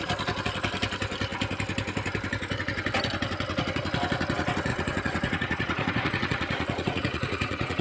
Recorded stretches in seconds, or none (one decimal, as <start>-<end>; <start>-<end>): 0.0-4.7